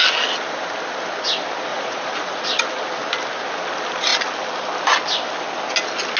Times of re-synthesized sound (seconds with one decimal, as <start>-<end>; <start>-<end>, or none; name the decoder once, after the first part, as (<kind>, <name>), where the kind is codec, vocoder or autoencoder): 1.7-2.6 (vocoder, Vocos)